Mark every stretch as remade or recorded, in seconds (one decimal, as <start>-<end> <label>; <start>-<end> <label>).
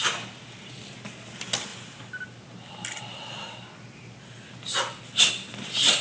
0.0-6.0 recorded